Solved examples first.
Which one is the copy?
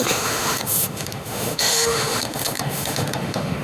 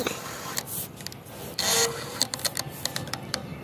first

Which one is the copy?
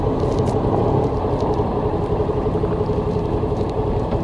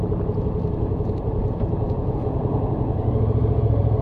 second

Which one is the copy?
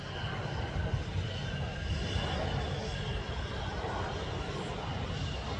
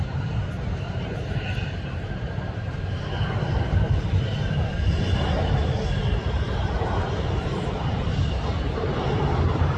second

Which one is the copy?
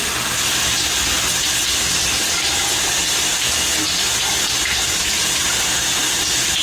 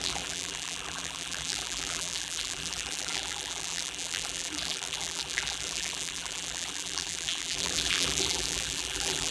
second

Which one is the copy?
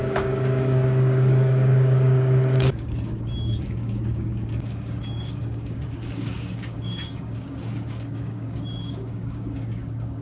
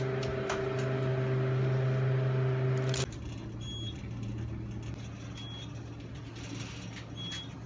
first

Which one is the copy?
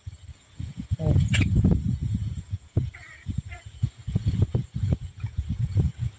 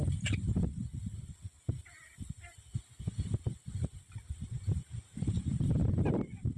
first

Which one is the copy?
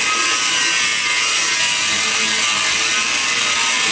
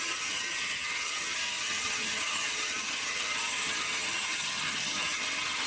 second